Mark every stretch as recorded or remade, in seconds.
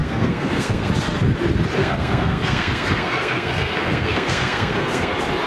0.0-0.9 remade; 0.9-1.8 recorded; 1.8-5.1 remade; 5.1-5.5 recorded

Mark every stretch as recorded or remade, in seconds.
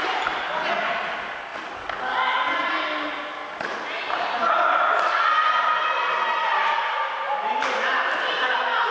0.0-8.9 recorded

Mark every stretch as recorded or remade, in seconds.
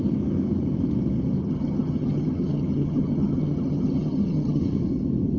0.0-1.4 recorded; 1.4-4.6 remade; 4.6-5.4 recorded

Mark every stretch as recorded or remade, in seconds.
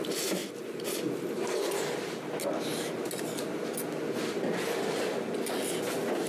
0.0-6.3 recorded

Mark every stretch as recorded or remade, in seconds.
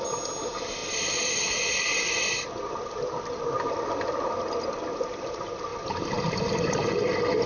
0.0-5.7 recorded; 5.7-7.1 remade; 7.1-7.5 recorded